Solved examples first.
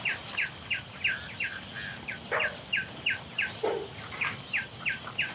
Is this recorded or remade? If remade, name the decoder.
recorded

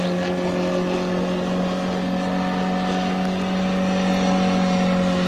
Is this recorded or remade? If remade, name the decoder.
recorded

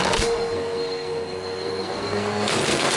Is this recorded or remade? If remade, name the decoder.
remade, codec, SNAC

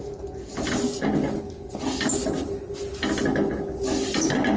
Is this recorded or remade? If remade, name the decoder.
recorded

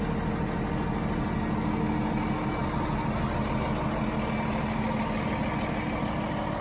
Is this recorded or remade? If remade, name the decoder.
recorded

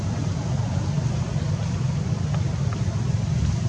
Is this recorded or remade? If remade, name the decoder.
recorded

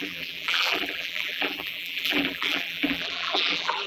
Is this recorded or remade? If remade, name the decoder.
remade, vocoder, BigVGAN v2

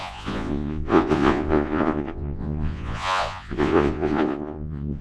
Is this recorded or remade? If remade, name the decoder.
remade, vocoder, Vocos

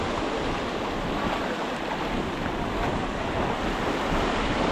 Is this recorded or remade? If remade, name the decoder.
recorded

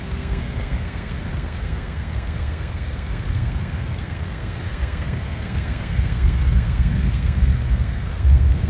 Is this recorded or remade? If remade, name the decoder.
remade, codec, SNAC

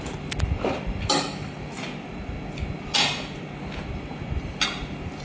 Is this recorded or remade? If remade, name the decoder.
recorded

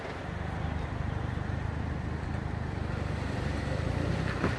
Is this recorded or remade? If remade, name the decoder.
recorded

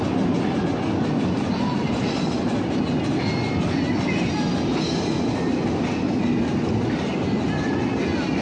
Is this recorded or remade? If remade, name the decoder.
recorded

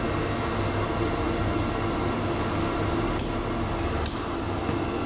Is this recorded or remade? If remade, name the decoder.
recorded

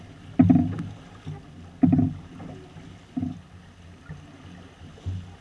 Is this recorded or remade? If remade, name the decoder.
recorded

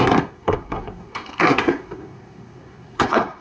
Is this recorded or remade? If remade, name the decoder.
remade, codec, SNAC